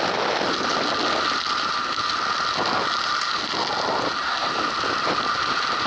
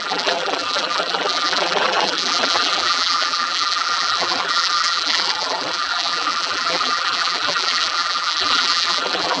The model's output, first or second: second